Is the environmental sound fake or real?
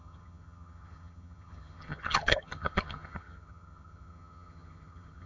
fake